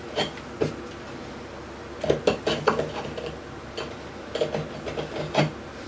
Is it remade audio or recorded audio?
recorded